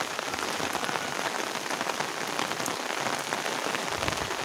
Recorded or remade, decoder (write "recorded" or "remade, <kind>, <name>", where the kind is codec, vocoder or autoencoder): recorded